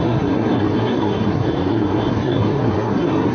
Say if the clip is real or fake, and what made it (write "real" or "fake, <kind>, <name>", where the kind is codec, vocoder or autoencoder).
fake, codec, SNAC